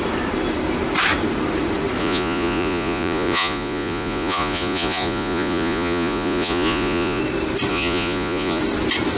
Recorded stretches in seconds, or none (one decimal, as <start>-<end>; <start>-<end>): 0.0-2.0; 7.2-7.7; 8.6-9.2